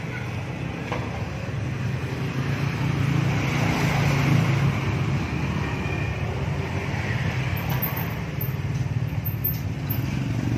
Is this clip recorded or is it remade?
recorded